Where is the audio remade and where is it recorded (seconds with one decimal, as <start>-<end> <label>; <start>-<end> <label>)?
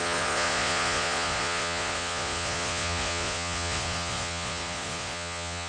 0.0-5.7 remade